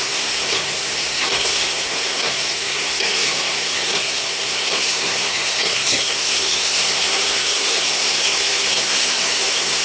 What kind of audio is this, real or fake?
fake